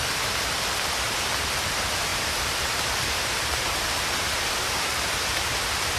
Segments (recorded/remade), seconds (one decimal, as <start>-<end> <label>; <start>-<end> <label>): 0.0-2.1 recorded; 2.1-5.6 remade; 5.6-6.0 recorded